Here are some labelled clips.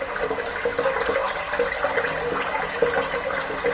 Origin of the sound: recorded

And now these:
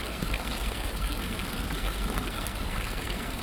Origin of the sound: remade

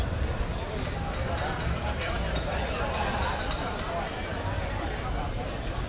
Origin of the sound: recorded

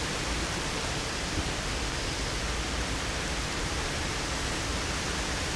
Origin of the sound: recorded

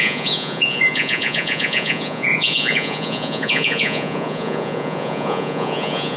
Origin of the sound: remade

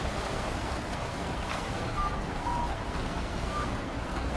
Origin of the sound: remade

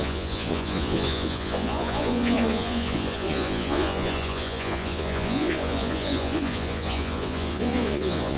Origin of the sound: remade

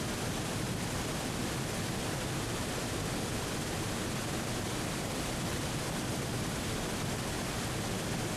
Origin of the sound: recorded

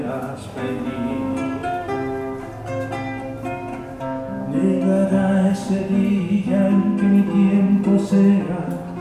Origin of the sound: recorded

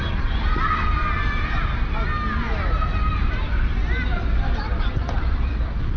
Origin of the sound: recorded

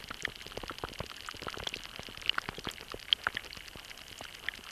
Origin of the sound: recorded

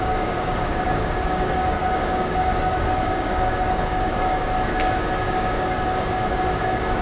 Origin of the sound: remade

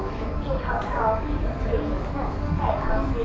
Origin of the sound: remade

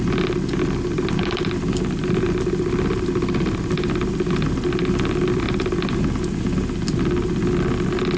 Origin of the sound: recorded